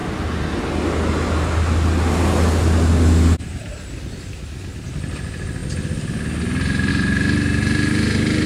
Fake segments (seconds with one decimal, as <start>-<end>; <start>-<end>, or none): none